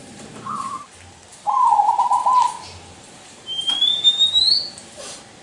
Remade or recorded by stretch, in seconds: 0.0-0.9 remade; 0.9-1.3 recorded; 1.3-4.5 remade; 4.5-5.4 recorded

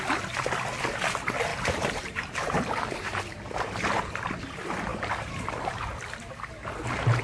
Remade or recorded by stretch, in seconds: 0.0-1.5 recorded; 1.5-4.1 remade; 4.1-4.9 recorded; 4.9-5.9 remade; 5.9-7.2 recorded

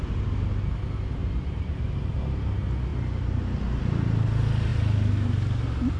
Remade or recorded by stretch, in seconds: 0.0-1.2 recorded; 1.2-1.7 remade; 1.7-6.0 recorded

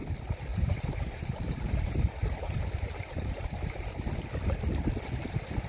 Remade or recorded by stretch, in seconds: 0.0-0.5 recorded; 0.5-3.9 remade; 3.9-5.7 recorded

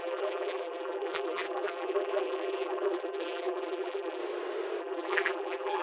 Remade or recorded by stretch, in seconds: 0.0-4.2 remade; 4.2-4.8 recorded; 4.8-5.8 remade